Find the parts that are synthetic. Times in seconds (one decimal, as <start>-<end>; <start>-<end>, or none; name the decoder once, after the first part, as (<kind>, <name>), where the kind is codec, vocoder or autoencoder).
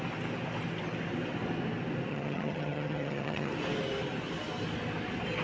2.1-3.5 (vocoder, HiFi-GAN)